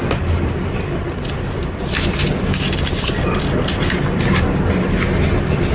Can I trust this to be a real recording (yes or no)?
yes